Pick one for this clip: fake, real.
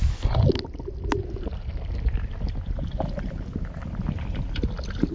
real